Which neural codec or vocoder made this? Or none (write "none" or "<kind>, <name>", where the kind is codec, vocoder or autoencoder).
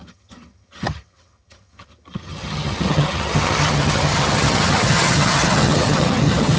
vocoder, HiFi-GAN